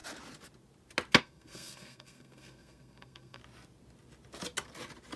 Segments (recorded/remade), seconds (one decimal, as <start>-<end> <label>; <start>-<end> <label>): 0.0-1.2 recorded; 1.2-3.4 remade; 3.4-5.2 recorded